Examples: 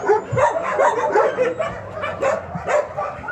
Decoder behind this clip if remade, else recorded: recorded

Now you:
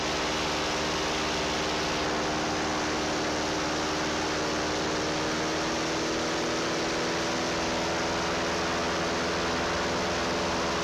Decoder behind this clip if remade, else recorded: recorded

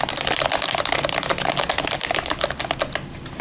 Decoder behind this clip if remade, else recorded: recorded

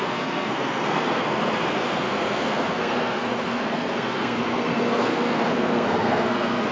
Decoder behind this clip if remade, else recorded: remade, codec, SNAC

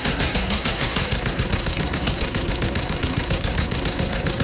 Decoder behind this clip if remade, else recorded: remade, codec, SNAC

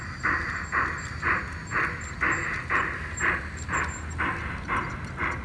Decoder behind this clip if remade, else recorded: recorded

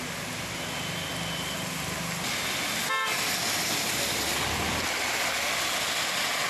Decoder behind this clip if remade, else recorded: recorded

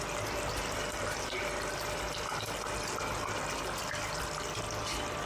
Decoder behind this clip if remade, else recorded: recorded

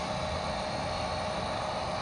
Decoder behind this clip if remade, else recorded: recorded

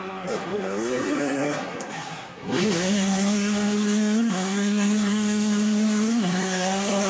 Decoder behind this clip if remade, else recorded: remade, codec, SNAC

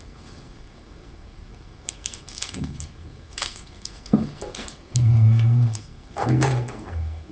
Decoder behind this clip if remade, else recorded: remade, codec, SNAC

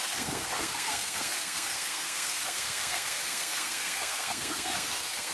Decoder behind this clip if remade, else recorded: remade, codec, SNAC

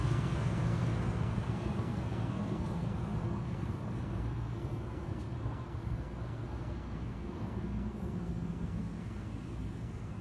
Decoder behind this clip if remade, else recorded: remade, codec, SNAC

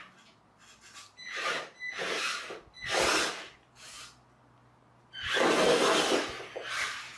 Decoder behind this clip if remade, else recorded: recorded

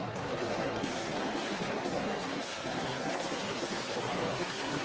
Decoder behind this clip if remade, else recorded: remade, codec, SNAC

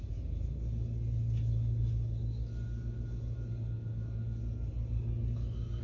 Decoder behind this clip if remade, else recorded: recorded